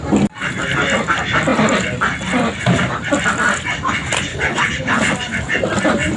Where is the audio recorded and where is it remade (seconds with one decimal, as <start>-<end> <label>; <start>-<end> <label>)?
0.0-4.3 recorded; 4.3-5.0 remade; 5.0-6.2 recorded

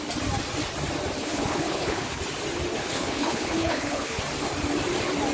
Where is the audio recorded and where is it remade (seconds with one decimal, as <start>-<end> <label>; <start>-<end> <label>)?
0.0-1.2 recorded; 1.2-2.2 remade; 2.2-2.8 recorded; 2.8-4.2 remade; 4.2-5.3 recorded

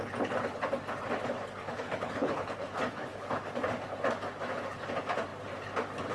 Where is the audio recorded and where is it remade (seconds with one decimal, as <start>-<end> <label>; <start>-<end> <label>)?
0.0-1.6 recorded; 1.6-3.3 remade; 3.3-6.1 recorded

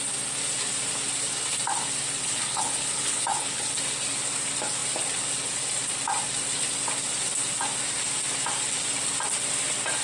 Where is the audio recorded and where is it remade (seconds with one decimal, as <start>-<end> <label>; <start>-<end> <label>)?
0.0-2.2 recorded; 2.2-3.7 remade; 3.7-10.0 recorded